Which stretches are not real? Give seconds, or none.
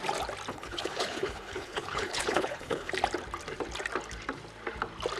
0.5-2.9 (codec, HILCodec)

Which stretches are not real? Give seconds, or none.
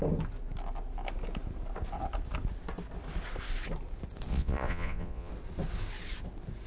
4.3-5.3 (vocoder, Vocos)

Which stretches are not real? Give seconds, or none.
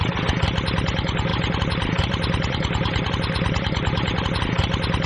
1.3-4.4 (vocoder, BigVGAN v2)